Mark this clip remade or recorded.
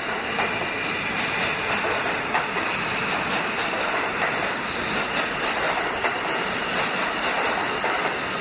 recorded